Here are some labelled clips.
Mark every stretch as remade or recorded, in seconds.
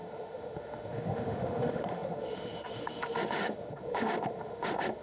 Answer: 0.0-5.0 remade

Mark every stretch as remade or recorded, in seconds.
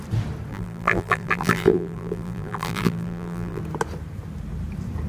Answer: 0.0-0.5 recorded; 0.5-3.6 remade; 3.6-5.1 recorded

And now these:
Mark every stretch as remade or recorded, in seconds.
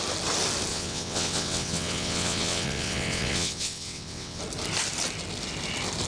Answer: 0.0-0.7 recorded; 0.7-4.4 remade; 4.4-6.1 recorded